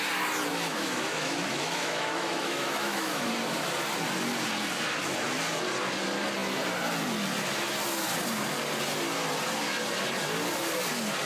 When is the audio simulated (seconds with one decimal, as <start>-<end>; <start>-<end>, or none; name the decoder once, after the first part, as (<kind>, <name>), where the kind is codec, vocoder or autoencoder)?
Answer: 0.5-3.3 (autoencoder, DAC-VAE)